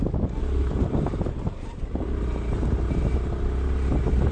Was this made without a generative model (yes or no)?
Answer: yes